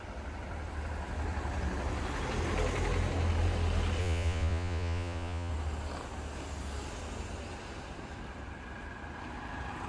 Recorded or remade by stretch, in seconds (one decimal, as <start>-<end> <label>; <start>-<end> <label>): 0.0-4.0 recorded; 4.0-5.5 remade; 5.5-9.9 recorded